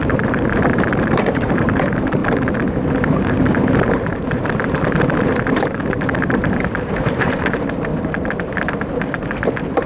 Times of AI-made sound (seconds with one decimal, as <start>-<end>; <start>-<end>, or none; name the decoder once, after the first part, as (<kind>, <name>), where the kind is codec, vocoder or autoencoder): 0.0-2.2 (vocoder, BigVGAN v2); 2.7-7.9; 8.5-9.9